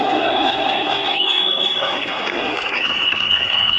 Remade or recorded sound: remade